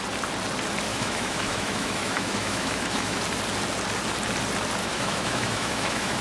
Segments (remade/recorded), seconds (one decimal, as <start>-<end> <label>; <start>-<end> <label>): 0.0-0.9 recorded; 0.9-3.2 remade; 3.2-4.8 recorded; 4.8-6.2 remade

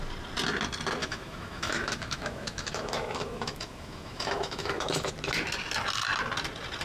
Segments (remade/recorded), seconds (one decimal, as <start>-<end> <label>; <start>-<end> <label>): 0.0-1.0 recorded; 1.0-5.1 remade; 5.1-6.8 recorded

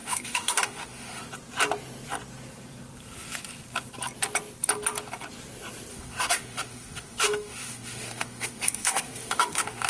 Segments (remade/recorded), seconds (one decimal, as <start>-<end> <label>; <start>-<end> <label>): 0.0-1.2 remade; 1.2-5.9 recorded; 5.9-9.9 remade

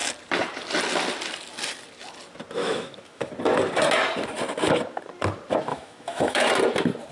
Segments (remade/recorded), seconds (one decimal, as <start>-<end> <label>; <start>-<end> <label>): 0.0-2.6 recorded; 2.6-3.3 remade; 3.3-5.7 recorded; 5.7-6.5 remade; 6.5-7.1 recorded

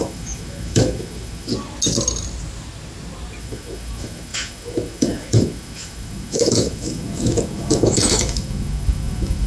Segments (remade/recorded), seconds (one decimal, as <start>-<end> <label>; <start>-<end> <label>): 0.0-1.5 remade; 1.5-3.4 recorded; 3.4-9.5 remade

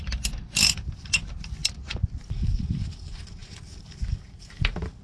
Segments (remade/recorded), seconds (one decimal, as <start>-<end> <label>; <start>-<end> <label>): 0.0-5.0 recorded

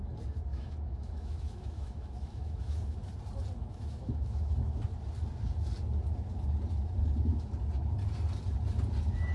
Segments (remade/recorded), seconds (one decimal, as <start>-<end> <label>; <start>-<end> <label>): 0.0-0.5 recorded; 0.5-3.1 remade; 3.1-3.6 recorded; 3.6-4.8 remade; 4.8-9.3 recorded

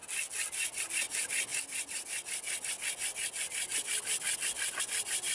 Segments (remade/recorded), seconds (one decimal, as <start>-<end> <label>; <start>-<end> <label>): 0.0-5.3 recorded